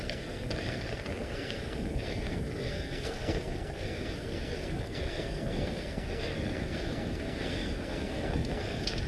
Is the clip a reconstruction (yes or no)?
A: yes